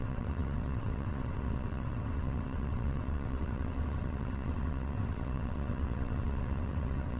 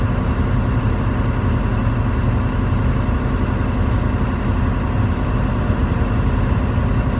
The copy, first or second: first